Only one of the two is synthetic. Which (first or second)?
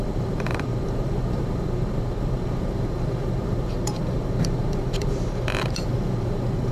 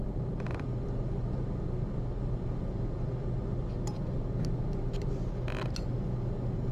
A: first